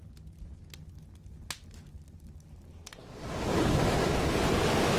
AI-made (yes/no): no